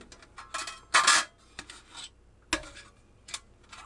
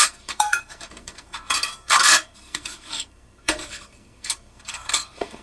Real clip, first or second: first